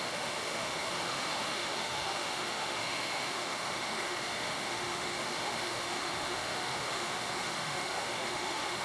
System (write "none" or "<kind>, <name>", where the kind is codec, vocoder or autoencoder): autoencoder, DAC-VAE